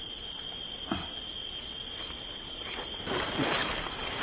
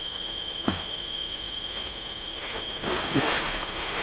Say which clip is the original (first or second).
first